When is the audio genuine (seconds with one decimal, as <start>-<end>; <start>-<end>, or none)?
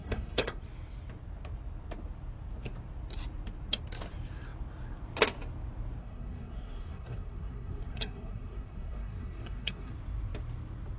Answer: 0.6-6.0; 9.9-11.0